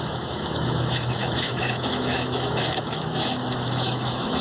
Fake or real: fake